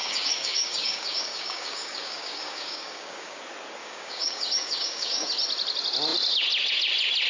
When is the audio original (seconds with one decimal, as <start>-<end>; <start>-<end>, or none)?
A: 3.4-3.8; 5.3-7.3